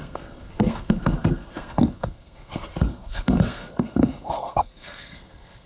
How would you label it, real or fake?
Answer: fake